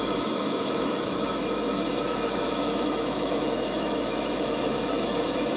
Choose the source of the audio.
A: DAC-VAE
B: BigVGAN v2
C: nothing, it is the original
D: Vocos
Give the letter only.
A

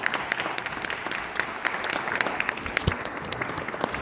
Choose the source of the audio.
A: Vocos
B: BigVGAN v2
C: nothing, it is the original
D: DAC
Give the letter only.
C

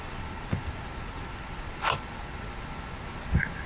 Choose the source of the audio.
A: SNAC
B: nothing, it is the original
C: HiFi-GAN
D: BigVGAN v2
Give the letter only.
B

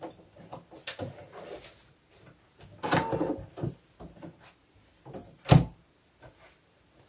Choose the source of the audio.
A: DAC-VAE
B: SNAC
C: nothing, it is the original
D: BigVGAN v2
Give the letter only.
C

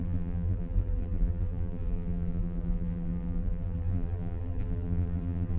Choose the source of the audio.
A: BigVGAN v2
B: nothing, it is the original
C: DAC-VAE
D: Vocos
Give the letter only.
A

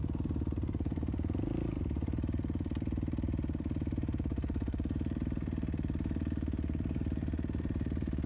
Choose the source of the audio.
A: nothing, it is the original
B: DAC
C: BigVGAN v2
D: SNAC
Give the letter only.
C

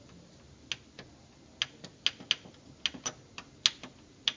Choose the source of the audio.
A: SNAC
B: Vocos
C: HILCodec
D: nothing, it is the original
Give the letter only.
D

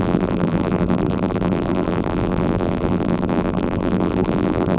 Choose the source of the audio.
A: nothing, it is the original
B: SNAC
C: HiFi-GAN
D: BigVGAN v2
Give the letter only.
D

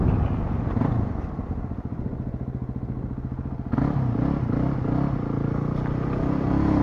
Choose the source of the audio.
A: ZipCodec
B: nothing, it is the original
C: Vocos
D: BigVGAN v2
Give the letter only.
B